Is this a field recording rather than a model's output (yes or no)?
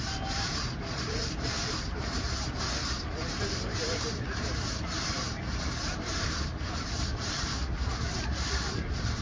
no